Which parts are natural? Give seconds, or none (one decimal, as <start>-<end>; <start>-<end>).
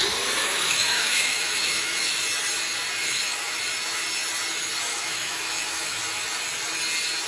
0.0-0.4; 2.2-3.0; 3.6-4.9; 6.0-7.3